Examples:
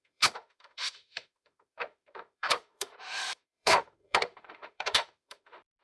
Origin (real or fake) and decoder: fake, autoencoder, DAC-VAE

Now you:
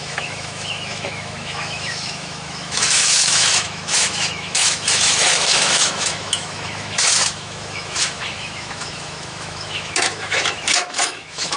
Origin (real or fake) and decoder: fake, autoencoder, DAC-VAE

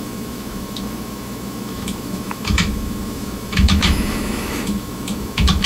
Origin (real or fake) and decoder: fake, autoencoder, DAC-VAE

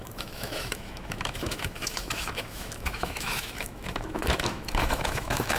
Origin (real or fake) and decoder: fake, autoencoder, DAC-VAE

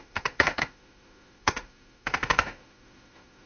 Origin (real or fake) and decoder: fake, autoencoder, DAC-VAE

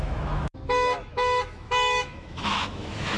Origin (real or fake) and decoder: fake, autoencoder, DAC-VAE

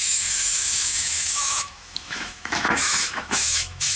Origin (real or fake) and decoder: fake, autoencoder, DAC-VAE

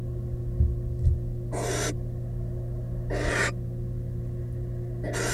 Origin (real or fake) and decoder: real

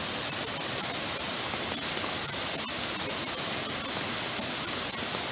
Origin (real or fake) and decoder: real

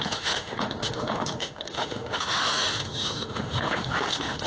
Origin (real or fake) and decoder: fake, autoencoder, DAC-VAE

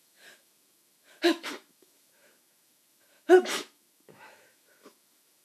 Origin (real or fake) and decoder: fake, autoencoder, DAC-VAE